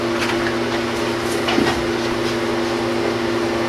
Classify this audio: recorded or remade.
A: recorded